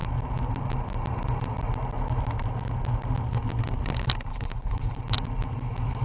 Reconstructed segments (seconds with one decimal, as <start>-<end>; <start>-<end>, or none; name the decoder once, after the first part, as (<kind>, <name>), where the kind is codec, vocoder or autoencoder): 4.3-5.0 (codec, HILCodec)